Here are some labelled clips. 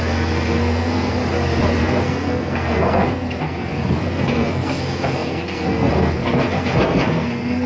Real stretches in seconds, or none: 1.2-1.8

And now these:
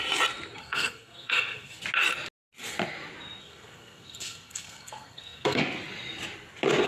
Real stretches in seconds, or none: 0.0-0.6; 1.8-3.4; 5.6-6.9

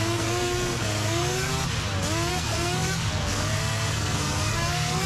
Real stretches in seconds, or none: 1.5-2.3

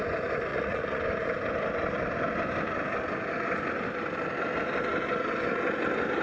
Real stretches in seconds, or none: 0.0-0.5; 1.0-6.2

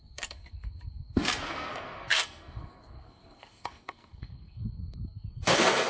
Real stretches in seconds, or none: none